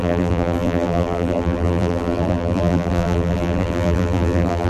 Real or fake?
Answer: fake